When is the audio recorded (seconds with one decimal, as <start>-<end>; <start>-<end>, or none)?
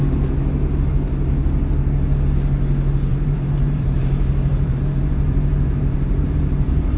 0.0-3.1